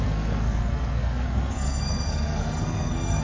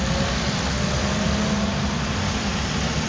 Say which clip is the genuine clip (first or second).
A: second